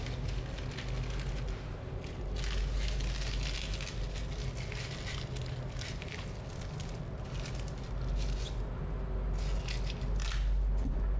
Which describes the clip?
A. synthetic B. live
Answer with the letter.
B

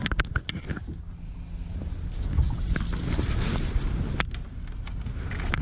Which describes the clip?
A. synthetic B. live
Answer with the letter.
B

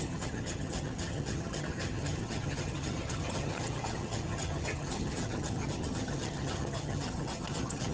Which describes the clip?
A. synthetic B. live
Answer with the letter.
A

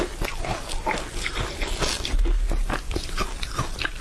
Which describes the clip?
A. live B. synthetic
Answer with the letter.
A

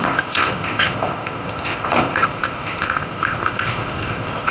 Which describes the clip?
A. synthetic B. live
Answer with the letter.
A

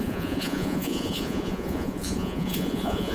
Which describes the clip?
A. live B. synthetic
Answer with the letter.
B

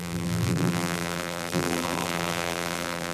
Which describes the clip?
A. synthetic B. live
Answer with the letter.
A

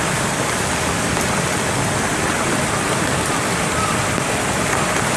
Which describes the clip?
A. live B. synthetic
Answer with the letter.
A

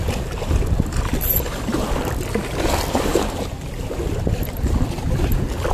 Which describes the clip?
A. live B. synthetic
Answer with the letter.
A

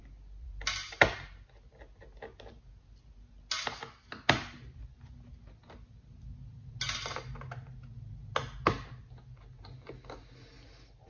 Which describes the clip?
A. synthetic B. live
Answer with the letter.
B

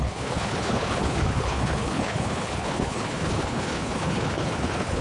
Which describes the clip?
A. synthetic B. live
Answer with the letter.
A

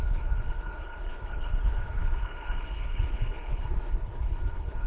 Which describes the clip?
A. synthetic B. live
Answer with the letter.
A